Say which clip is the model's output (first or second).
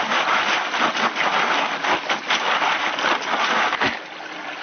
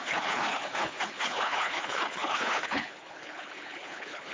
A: second